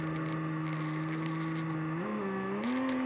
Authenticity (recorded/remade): recorded